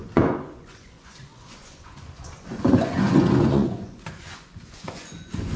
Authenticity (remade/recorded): remade